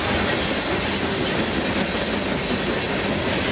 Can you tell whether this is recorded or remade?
recorded